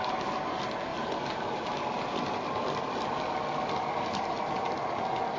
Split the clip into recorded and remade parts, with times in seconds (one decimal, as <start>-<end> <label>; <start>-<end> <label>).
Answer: 0.0-5.4 recorded